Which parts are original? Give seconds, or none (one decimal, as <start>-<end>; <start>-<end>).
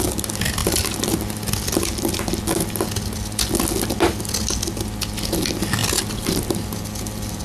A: 0.0-7.4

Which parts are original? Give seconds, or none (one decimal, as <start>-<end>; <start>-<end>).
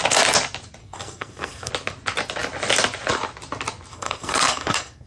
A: 0.0-0.8; 1.7-3.9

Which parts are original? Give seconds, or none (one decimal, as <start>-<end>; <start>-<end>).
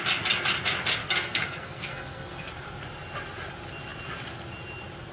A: 0.0-1.0; 2.5-5.1